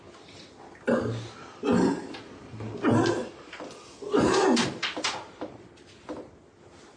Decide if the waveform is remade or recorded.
recorded